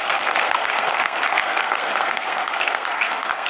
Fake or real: fake